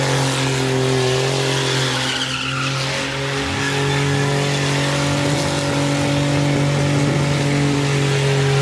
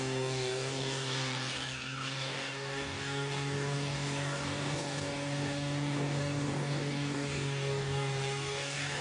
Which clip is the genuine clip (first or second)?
first